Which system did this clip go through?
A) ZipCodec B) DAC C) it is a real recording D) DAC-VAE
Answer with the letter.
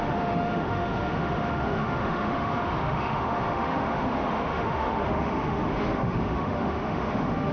D